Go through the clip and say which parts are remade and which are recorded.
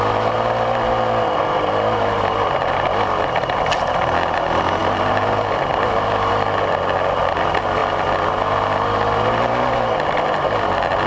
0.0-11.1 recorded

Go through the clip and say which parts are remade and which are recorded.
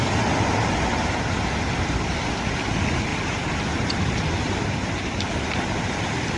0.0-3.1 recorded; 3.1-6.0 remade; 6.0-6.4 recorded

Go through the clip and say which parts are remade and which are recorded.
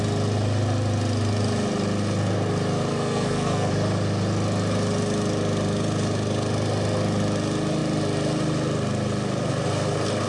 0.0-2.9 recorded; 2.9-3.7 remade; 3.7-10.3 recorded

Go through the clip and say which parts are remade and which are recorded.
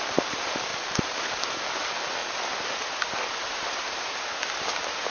0.0-0.7 recorded; 0.7-1.4 remade; 1.4-5.1 recorded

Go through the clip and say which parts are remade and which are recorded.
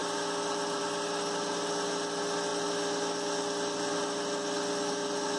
0.0-5.4 recorded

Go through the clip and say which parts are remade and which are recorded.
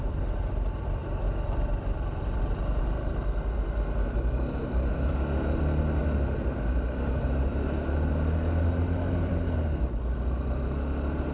0.0-11.3 recorded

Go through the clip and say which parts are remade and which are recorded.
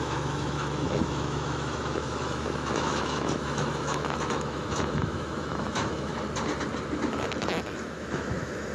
0.0-6.1 remade; 6.1-7.1 recorded; 7.1-8.7 remade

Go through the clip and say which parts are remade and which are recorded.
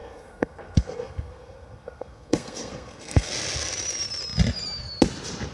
0.0-3.3 remade; 3.3-5.5 recorded